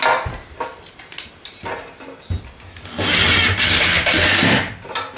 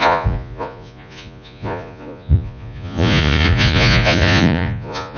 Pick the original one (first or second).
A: first